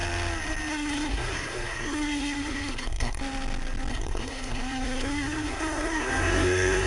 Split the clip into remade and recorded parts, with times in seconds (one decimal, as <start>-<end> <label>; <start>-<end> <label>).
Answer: 0.0-0.7 recorded; 0.7-3.2 remade; 3.2-3.9 recorded; 3.9-6.9 remade